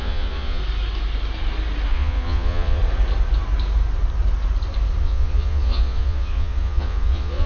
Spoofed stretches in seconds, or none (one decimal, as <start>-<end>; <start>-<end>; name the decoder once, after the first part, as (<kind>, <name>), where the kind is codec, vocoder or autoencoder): 0.0-0.6 (vocoder, Vocos); 1.9-2.8; 5.0-7.5